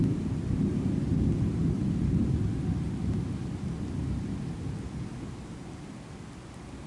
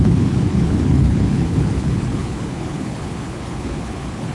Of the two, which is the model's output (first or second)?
second